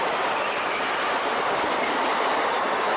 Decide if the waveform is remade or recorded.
recorded